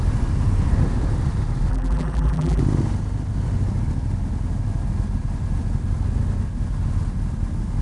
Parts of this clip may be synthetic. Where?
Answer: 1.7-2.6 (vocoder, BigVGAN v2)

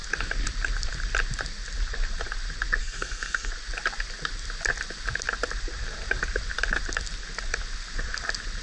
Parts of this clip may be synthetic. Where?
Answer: 2.8-3.5 (codec, SNAC)

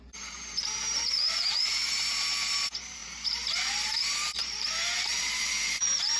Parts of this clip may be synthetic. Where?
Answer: 0.0-6.2 (vocoder, BigVGAN v2)